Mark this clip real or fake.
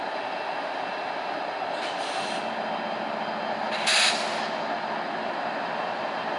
real